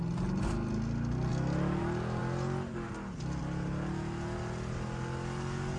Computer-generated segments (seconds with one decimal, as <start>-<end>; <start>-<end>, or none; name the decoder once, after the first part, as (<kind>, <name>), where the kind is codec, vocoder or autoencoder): none